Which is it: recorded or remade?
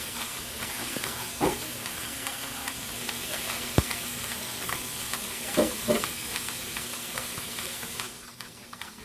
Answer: remade